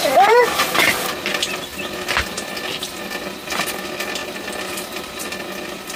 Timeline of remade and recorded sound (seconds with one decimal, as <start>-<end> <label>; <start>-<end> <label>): 0.0-1.7 remade; 1.7-3.8 recorded; 3.8-6.0 remade

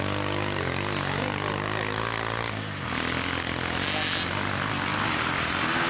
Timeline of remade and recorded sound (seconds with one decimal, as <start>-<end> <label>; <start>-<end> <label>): 0.0-4.9 recorded; 4.9-5.9 remade